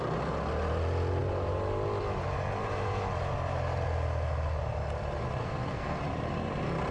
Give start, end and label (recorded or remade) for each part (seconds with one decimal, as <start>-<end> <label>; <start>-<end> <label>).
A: 0.0-5.4 recorded; 5.4-6.0 remade; 6.0-6.9 recorded